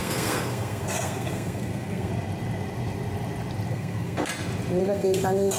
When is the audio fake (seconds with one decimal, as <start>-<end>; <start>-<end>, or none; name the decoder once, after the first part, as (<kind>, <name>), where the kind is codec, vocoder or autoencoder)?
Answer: 0.0-2.1 (codec, SNAC); 3.7-4.3; 4.8-5.6